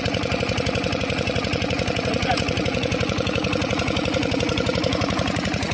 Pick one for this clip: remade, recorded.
remade